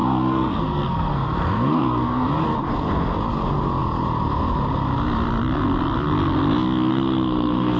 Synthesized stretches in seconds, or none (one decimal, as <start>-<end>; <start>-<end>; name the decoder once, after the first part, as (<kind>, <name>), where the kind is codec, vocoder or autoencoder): 0.0-2.3 (codec, SNAC); 6.9-7.8